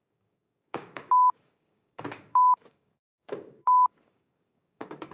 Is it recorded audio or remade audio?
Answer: remade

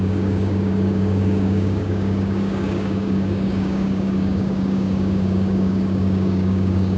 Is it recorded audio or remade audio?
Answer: remade